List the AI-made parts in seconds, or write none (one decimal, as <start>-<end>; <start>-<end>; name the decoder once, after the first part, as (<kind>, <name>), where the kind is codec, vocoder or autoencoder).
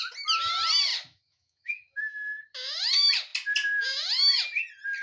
0.9-2.4 (autoencoder, DAC-VAE)